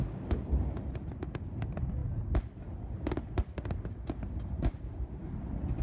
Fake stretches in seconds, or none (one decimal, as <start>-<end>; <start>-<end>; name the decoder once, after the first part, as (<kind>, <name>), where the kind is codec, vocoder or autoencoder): none